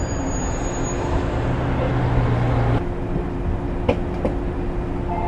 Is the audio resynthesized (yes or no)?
no